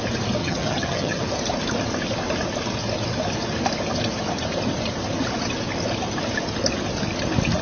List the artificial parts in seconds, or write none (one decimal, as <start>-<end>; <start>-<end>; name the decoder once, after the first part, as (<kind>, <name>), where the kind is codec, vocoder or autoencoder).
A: 0.4-1.2 (vocoder, HiFi-GAN)